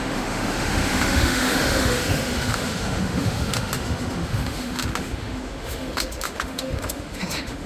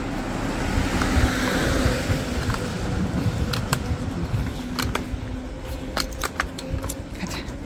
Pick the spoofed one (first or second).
first